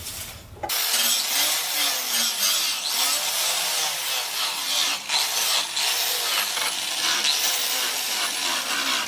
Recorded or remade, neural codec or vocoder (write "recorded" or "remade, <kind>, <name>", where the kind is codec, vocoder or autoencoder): recorded